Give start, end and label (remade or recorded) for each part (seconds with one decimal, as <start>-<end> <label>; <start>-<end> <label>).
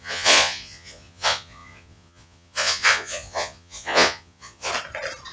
0.0-4.7 remade; 4.7-5.3 recorded